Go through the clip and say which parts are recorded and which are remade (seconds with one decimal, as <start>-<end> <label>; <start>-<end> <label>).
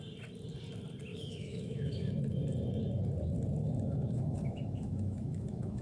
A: 0.0-1.1 recorded; 1.1-2.1 remade; 2.1-3.6 recorded; 3.6-5.8 remade